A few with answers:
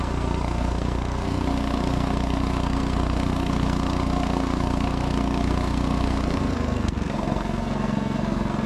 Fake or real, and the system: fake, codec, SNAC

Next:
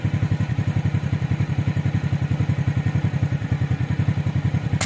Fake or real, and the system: real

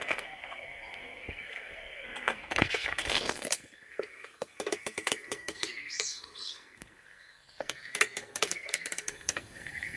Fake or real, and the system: fake, codec, SNAC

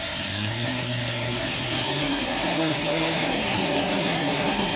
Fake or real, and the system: fake, codec, SNAC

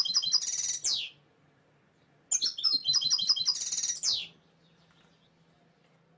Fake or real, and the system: real